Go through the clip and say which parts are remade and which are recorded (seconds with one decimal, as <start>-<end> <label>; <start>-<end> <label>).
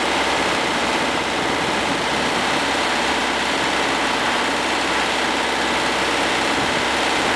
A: 0.0-3.2 remade; 3.2-6.3 recorded; 6.3-7.4 remade